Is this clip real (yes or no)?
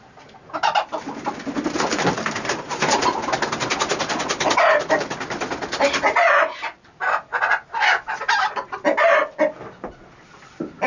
yes